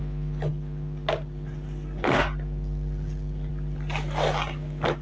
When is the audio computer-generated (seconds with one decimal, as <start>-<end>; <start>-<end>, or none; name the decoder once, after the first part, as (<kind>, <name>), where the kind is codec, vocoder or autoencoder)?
none